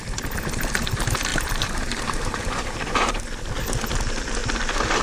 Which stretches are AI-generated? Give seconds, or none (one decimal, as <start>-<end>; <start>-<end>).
1.3-3.2